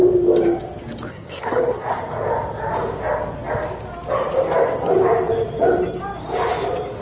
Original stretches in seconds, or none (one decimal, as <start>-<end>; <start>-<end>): 0.0-1.1; 2.0-7.0